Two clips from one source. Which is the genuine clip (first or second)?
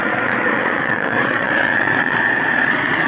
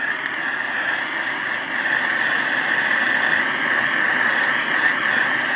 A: second